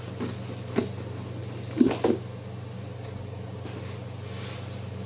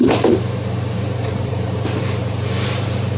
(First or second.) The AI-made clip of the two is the second